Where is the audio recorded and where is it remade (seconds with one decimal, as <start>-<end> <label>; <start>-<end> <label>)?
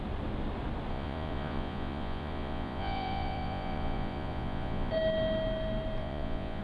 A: 0.0-0.9 recorded; 0.9-4.9 remade; 4.9-6.0 recorded; 6.0-6.6 remade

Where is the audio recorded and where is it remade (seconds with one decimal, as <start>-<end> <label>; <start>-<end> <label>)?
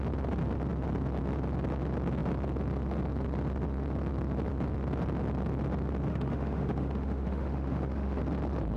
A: 0.0-6.1 recorded; 6.1-8.2 remade; 8.2-8.8 recorded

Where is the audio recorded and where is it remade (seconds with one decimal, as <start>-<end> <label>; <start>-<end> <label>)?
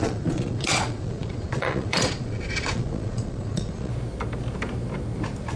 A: 0.0-3.9 remade; 3.9-5.6 recorded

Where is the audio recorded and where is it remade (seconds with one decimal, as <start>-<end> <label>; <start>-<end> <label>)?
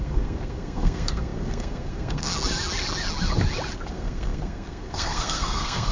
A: 0.0-2.3 remade; 2.3-3.9 recorded; 3.9-5.9 remade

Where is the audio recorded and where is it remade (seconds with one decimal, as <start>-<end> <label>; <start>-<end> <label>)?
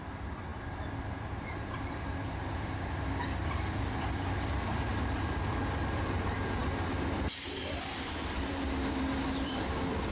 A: 0.0-0.5 remade; 0.5-3.8 recorded; 3.8-6.6 remade; 6.6-7.5 recorded; 7.5-10.1 remade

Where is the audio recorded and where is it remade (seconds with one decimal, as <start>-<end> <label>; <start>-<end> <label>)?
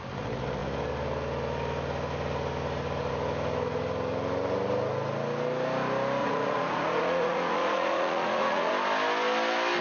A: 0.0-6.2 recorded; 6.2-8.7 remade; 8.7-9.8 recorded